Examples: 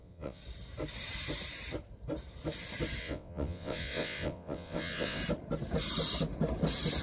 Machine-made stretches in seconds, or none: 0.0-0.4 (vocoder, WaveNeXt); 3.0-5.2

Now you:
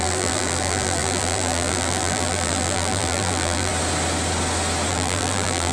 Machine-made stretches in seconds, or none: 0.0-3.7 (vocoder, BigVGAN v2); 4.9-5.7

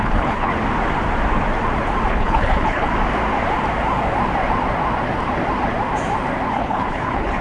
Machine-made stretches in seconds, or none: 0.0-0.5 (codec, HILCodec); 2.1-2.9; 6.5-7.4

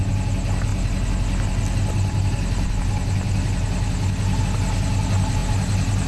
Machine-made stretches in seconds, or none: none

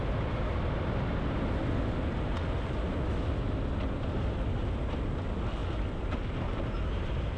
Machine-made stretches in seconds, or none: none